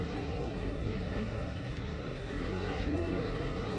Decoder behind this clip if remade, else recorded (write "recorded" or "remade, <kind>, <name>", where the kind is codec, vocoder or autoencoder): remade, codec, SNAC